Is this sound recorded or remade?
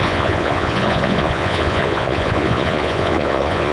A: remade